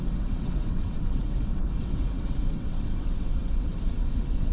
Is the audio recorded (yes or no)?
no